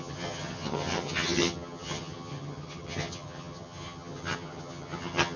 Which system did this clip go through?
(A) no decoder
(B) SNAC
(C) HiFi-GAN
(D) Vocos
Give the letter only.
C